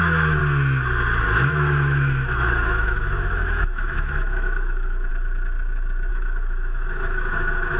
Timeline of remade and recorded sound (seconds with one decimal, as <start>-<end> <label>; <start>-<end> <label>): 0.0-0.4 remade; 0.4-1.2 recorded; 1.2-5.1 remade; 5.1-6.1 recorded; 6.1-7.8 remade